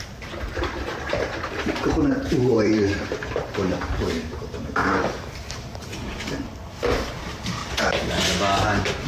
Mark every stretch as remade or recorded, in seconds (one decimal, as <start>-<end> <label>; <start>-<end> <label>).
0.0-4.8 remade; 4.8-5.5 recorded; 5.5-5.9 remade; 5.9-7.1 recorded; 7.1-7.6 remade; 7.6-9.1 recorded